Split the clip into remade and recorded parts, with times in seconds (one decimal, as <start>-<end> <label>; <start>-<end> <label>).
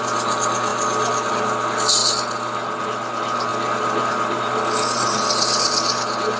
0.0-6.4 recorded